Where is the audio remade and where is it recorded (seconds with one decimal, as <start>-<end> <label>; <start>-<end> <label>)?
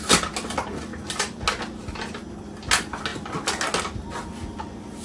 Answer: 0.0-5.0 recorded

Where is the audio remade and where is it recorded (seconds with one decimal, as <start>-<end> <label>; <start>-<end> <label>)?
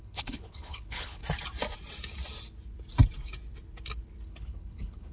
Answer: 0.0-1.2 remade; 1.2-4.3 recorded; 4.3-5.1 remade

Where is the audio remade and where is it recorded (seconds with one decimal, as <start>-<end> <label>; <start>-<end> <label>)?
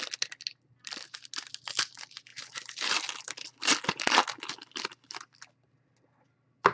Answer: 0.0-6.7 recorded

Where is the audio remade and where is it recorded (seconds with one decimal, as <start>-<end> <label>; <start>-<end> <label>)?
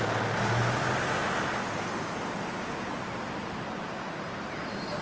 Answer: 0.0-5.0 recorded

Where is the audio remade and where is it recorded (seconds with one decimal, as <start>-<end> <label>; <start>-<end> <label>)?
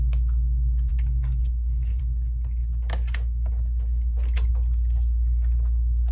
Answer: 0.0-0.9 recorded; 0.9-2.0 remade; 2.0-6.1 recorded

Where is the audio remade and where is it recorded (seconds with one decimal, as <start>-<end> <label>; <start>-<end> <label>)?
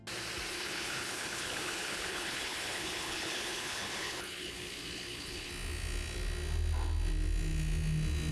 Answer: 0.0-0.5 recorded; 0.5-5.5 remade; 5.5-8.3 recorded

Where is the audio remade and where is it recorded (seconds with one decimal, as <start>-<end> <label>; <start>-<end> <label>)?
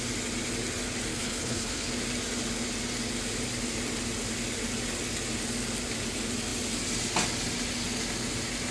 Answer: 0.0-1.1 recorded; 1.1-1.9 remade; 1.9-8.7 recorded